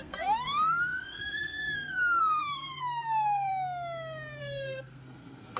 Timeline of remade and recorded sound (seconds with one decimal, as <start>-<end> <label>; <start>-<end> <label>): 0.0-3.5 remade; 3.5-4.4 recorded; 4.4-5.6 remade